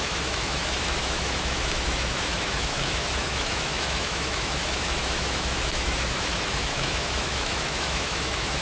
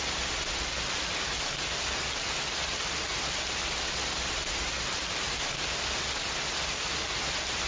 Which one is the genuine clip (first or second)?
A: second